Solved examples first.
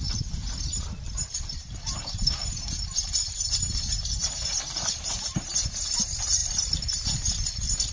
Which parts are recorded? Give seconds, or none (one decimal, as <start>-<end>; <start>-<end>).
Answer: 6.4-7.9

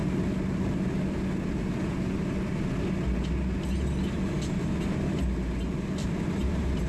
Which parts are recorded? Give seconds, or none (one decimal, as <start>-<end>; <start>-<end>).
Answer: 0.0-6.0

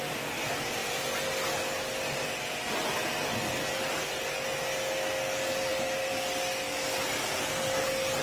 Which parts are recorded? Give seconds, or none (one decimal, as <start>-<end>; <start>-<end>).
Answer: 0.0-5.5; 6.1-8.2

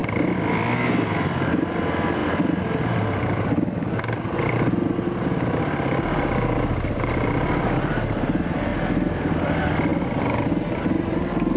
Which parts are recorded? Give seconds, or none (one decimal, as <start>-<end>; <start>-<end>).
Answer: 0.0-1.8; 9.9-10.8

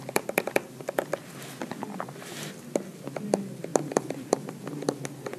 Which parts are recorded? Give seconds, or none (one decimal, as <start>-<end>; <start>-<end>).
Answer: 0.0-3.7; 4.7-5.4

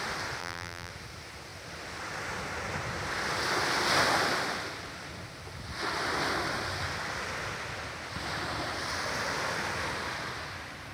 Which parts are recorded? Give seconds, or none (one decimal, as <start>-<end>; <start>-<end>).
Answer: 0.0-0.4; 0.9-10.9